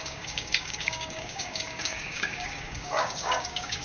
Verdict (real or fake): fake